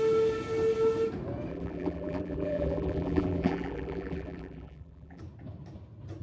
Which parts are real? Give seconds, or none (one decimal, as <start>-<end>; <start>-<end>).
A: 0.0-1.5; 5.2-6.2